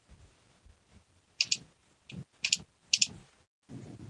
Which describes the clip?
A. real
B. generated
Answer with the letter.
A